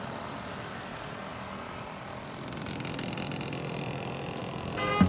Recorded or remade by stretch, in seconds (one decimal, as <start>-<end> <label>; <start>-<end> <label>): 0.0-5.1 recorded